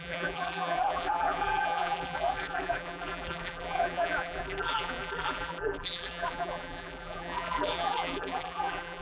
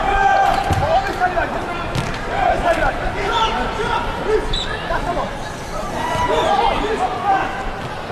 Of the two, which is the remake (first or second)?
first